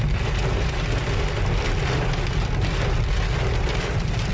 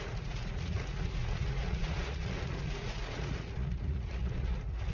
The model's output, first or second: second